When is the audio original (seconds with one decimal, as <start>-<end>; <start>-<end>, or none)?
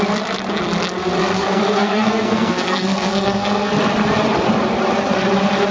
0.0-1.2; 3.7-5.7